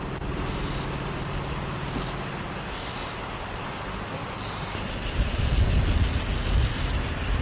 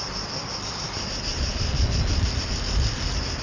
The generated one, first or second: second